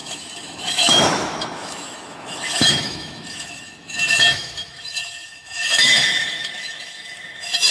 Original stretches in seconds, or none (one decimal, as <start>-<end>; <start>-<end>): none